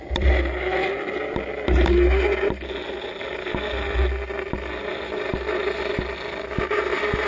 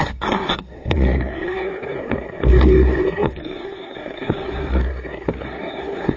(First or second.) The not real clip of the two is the second